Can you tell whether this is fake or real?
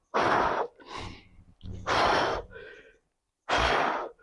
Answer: real